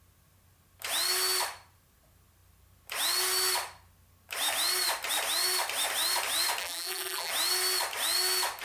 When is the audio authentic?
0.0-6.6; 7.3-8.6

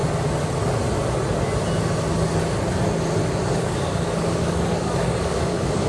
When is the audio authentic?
0.0-3.5

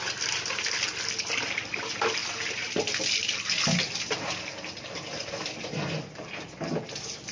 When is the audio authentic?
0.0-7.3

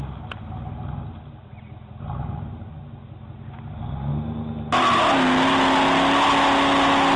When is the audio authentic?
0.0-2.3; 2.8-7.2

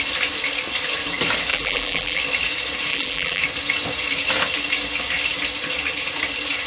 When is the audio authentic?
0.0-1.5; 2.2-2.9; 3.4-6.7

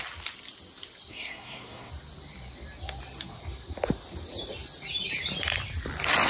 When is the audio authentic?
0.0-1.1; 1.9-6.3

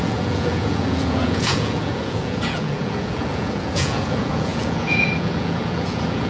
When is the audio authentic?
none

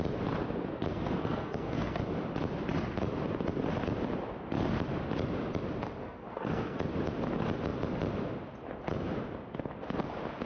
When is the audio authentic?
0.0-0.9; 2.0-6.0; 6.8-10.5